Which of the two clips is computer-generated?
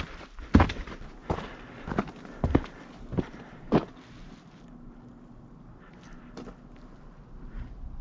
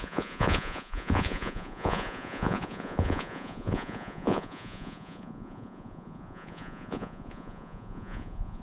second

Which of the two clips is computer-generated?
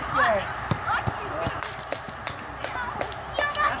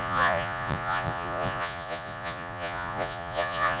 second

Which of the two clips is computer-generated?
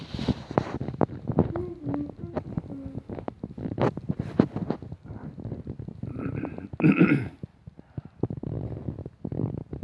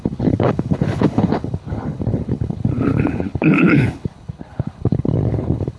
second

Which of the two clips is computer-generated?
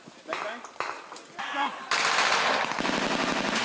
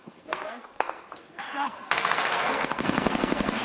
second